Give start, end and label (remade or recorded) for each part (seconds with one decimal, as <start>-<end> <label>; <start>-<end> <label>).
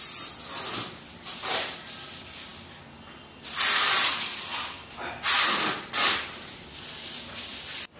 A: 0.0-8.0 recorded